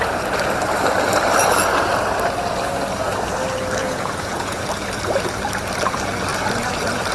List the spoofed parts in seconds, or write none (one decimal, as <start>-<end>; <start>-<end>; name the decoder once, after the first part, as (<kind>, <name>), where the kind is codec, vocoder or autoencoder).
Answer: 3.8-4.6 (vocoder, Vocos)